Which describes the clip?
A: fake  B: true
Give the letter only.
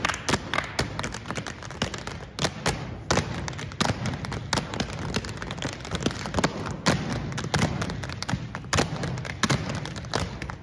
B